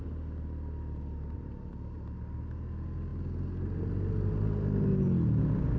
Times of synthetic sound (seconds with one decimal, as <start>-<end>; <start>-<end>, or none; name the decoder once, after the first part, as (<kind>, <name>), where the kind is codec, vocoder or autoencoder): none